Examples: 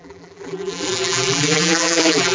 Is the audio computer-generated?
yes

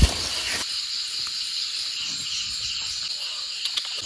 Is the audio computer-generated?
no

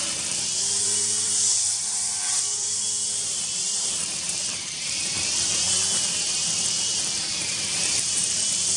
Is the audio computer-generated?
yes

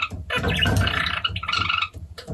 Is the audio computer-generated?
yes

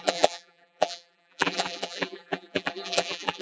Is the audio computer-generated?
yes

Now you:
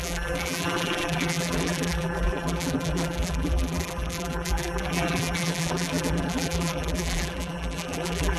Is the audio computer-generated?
yes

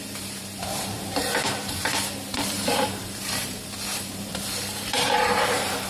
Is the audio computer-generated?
yes